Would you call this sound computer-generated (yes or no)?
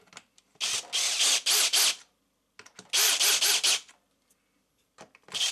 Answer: no